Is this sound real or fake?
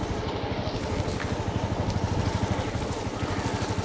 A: real